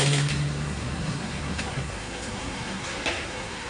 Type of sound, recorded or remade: remade